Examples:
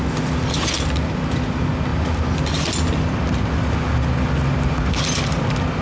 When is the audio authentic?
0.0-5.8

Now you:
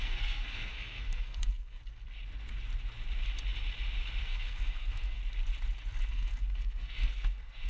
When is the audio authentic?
1.8-4.2; 5.2-6.1

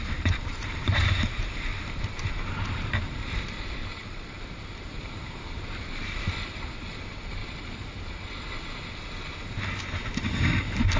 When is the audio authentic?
1.7-2.3; 3.8-4.4; 7.4-11.0

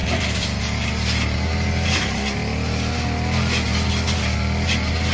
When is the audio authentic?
0.6-5.1

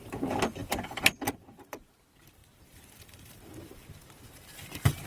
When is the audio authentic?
none

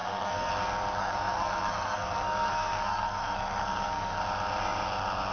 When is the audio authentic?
0.5-1.0; 4.2-5.3

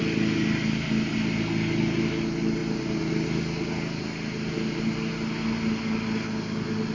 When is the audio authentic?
0.0-6.9

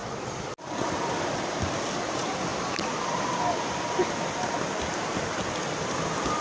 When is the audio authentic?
0.0-6.4